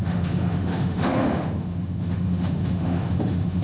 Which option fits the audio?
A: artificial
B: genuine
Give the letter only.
A